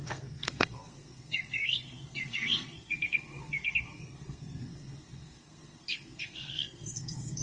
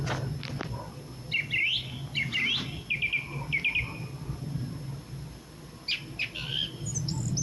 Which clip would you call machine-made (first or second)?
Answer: first